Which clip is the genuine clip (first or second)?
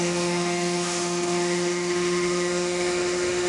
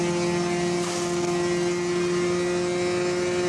second